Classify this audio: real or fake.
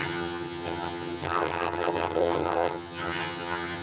fake